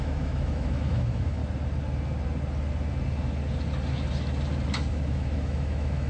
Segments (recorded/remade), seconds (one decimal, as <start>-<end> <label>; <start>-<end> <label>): 0.0-1.4 remade; 1.4-5.1 recorded; 5.1-6.1 remade